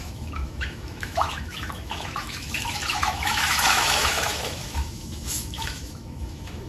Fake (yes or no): yes